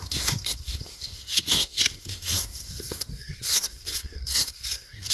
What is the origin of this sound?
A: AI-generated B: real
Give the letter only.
A